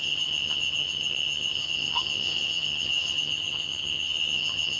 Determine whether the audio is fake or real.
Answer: fake